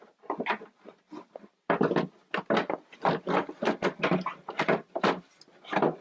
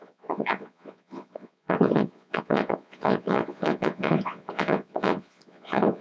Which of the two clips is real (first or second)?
first